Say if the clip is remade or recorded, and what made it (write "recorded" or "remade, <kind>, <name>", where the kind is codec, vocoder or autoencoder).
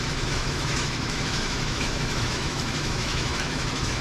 remade, autoencoder, DAC-VAE